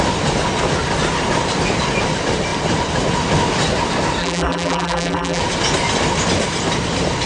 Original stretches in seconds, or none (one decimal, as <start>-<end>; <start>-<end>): 0.0-4.2; 5.4-7.3